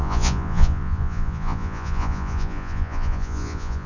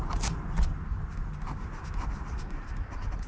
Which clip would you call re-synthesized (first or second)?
first